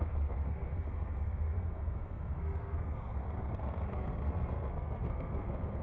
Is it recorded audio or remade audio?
remade